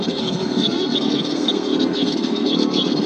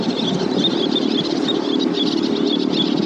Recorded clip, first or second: second